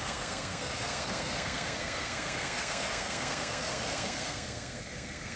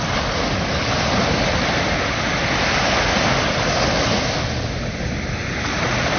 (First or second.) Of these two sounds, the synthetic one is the first